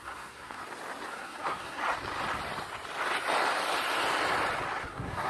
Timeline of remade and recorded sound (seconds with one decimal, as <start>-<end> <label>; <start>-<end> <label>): 0.0-0.6 remade; 0.6-1.1 recorded; 1.1-1.8 remade; 1.8-4.8 recorded; 4.8-5.3 remade